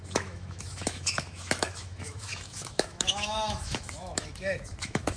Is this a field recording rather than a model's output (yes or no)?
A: no